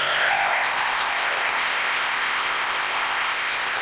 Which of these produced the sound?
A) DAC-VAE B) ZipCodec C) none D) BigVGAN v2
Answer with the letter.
B